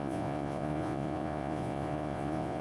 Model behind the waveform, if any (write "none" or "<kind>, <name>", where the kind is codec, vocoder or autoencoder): vocoder, Vocos